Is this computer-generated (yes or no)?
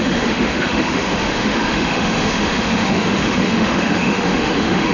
yes